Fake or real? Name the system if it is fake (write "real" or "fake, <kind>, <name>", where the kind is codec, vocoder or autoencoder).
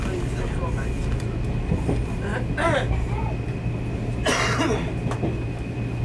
real